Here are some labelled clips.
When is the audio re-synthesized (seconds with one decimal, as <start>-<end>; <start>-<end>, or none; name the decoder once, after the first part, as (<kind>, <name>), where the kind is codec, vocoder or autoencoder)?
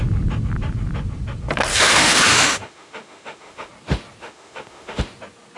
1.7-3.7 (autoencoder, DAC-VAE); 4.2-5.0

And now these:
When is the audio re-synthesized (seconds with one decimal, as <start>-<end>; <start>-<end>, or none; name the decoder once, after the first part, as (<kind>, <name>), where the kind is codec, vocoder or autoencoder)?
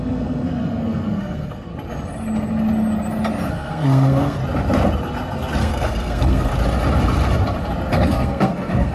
0.0-1.7 (codec, SNAC); 3.5-4.4; 5.6-6.5; 7.9-8.9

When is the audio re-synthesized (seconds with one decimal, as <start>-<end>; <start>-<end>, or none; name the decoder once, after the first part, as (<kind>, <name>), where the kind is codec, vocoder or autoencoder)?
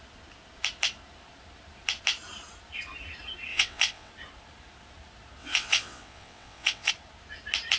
3.5-4.1 (vocoder, WaveNeXt); 5.4-6.9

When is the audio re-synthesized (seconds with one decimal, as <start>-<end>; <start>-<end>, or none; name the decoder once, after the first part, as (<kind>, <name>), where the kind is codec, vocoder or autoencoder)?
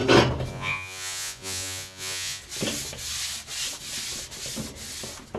0.5-2.4 (vocoder, Vocos)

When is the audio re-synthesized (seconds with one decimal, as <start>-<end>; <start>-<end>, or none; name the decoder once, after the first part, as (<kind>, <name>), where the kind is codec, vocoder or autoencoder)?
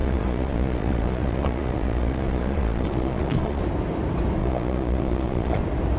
0.0-3.6 (vocoder, Vocos); 4.4-5.6